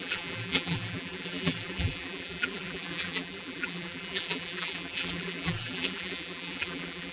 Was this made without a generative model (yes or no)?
no